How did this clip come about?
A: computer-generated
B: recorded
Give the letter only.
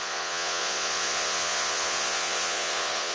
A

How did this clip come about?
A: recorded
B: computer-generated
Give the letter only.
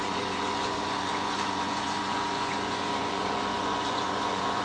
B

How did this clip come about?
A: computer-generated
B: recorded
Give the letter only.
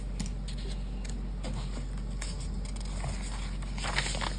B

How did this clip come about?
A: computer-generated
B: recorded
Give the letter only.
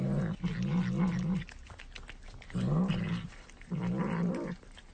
B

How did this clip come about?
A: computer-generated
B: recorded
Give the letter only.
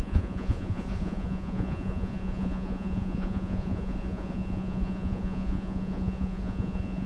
A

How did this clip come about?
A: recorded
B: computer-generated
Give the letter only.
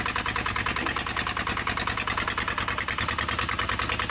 A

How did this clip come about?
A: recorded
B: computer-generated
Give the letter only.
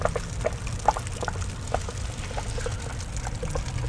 A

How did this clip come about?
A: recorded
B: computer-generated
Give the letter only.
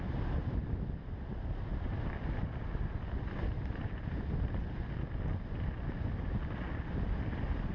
A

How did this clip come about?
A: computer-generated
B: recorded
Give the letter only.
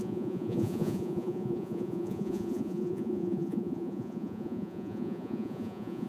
A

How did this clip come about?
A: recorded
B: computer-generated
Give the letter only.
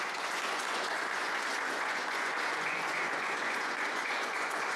B